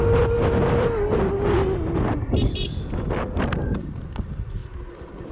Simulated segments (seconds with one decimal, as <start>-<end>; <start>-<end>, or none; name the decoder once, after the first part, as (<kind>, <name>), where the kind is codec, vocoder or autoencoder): none